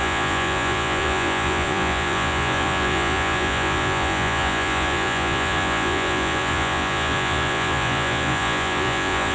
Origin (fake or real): fake